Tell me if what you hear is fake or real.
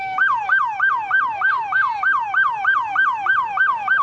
real